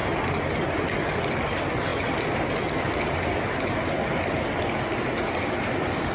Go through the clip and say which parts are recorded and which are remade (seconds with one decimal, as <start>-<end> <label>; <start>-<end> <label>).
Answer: 0.0-6.1 recorded